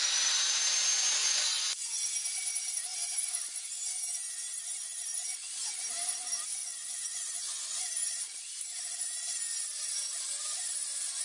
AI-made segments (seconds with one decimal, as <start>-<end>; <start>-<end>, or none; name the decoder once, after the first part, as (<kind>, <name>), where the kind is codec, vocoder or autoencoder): 1.2-2.1 (vocoder, Vocos); 6.6-7.9